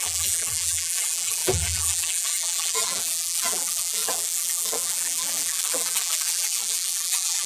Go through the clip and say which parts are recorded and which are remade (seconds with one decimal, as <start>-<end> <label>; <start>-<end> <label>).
0.0-7.5 remade